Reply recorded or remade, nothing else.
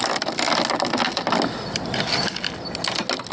recorded